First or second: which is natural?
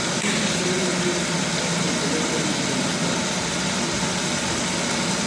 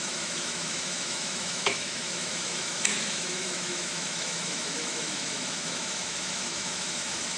first